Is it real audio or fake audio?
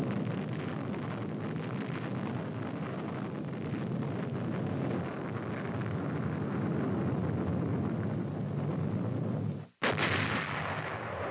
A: real